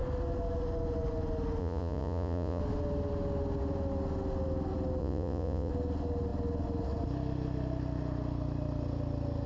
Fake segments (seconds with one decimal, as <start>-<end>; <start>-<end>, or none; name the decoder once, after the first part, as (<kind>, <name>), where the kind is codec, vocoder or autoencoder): 1.6-2.6 (vocoder, Vocos); 5.0-5.7